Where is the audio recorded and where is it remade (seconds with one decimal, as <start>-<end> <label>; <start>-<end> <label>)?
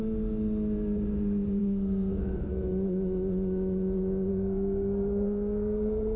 0.0-1.6 recorded; 1.6-2.5 remade; 2.5-4.3 recorded; 4.3-6.2 remade